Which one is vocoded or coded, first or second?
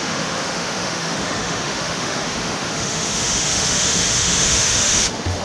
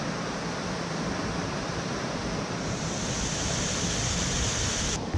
first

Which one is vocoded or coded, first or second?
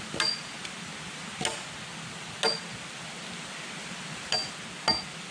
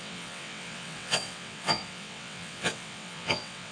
second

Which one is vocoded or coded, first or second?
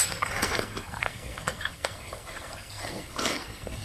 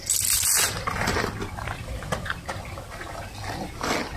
first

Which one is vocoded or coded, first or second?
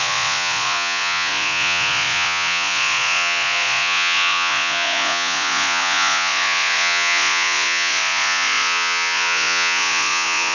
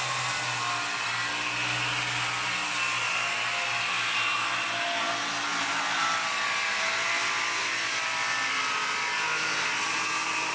first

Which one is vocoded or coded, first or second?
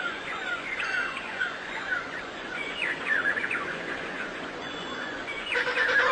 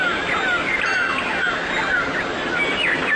first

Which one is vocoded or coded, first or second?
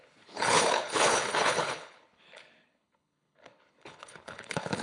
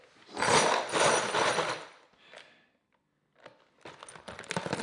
first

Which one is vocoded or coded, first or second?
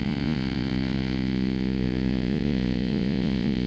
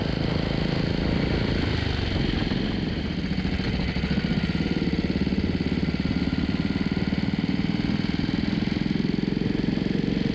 first